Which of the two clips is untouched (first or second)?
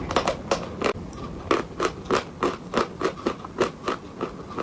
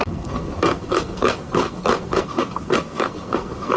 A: first